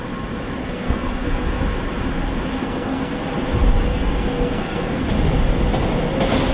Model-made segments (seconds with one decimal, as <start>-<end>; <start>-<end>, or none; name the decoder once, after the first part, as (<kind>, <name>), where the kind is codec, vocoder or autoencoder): 0.6-1.6 (codec, SNAC); 2.6-3.2; 3.9-5.0